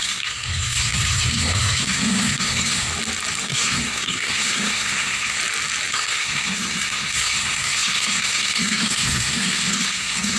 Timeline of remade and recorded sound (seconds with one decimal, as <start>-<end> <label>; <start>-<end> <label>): 0.0-2.9 remade; 2.9-3.4 recorded; 3.4-5.4 remade; 5.4-5.9 recorded; 5.9-10.4 remade